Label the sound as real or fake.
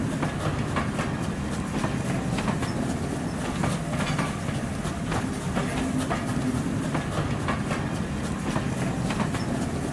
real